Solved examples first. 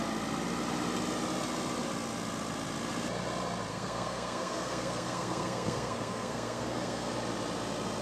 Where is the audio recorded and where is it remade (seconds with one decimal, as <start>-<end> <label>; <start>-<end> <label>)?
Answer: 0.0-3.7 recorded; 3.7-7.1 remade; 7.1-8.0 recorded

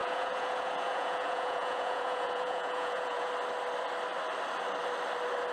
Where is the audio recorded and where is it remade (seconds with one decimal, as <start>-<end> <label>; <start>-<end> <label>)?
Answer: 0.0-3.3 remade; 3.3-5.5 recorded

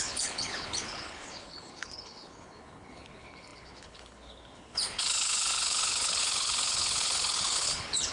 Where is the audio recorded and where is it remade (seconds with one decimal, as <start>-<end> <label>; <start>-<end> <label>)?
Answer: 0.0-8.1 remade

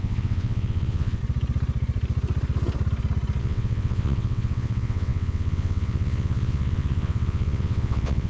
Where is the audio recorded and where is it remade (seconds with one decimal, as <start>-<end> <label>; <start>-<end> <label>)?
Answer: 0.0-1.2 remade; 1.2-3.4 recorded; 3.4-8.3 remade